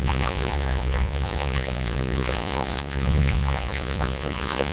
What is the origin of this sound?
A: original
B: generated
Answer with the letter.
B